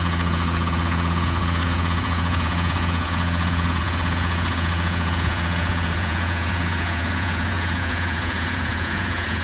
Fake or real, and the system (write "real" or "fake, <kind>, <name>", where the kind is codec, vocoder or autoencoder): fake, vocoder, Vocos